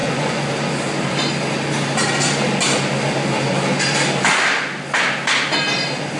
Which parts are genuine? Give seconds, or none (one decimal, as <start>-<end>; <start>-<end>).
0.5-6.2